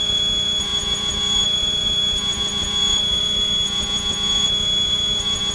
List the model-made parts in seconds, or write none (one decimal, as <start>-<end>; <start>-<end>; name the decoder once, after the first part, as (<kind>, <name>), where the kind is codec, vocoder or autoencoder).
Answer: 0.0-5.5 (vocoder, Vocos)